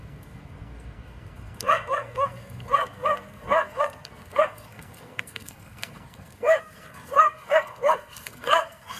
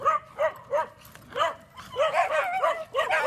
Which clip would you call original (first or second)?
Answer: second